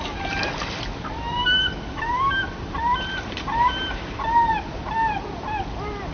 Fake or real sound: fake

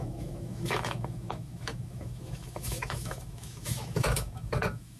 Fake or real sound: fake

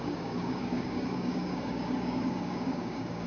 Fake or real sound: fake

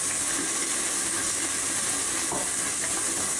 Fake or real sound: real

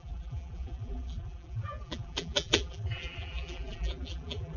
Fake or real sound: fake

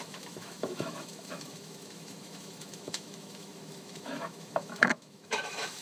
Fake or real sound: fake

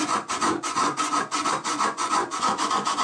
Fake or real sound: fake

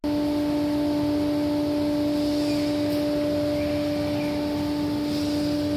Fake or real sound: real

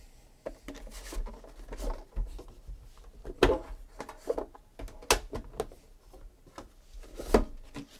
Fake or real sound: real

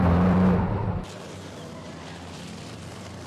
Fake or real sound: fake